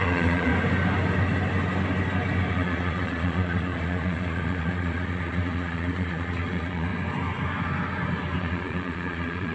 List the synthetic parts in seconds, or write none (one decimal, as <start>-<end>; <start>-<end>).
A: 0.0-0.5; 2.5-6.9; 8.4-9.5